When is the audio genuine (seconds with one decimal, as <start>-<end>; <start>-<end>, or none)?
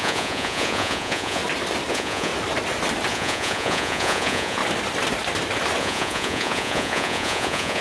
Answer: 1.4-1.9; 2.3-3.1; 4.6-5.8